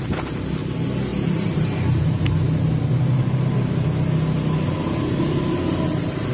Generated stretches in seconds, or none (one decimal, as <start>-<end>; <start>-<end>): 1.1-2.3